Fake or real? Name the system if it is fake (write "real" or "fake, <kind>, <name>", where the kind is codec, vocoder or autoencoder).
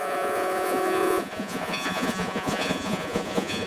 fake, vocoder, Vocos